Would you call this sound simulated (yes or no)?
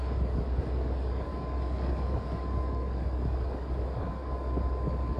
yes